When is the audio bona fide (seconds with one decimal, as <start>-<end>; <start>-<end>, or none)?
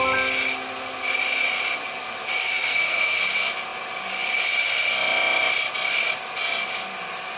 0.0-2.4; 3.2-7.4